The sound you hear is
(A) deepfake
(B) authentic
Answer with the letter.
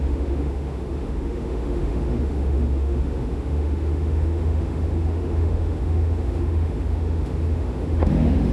A